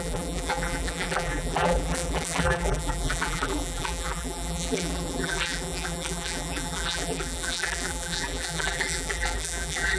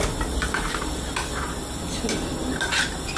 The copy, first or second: first